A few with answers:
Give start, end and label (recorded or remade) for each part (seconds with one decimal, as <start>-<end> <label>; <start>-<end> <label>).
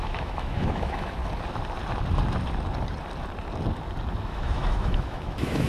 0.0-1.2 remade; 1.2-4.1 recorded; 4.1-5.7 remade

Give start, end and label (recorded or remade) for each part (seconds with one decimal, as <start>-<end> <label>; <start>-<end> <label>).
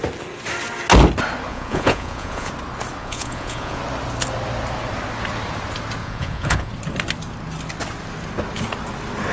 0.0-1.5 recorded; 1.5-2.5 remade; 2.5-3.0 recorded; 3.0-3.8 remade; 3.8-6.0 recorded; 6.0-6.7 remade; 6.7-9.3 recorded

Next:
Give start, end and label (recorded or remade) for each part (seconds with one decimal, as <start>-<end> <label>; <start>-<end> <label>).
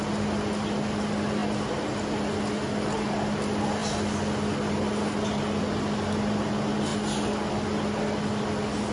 0.0-8.9 recorded